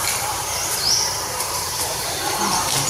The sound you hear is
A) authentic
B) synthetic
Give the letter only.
B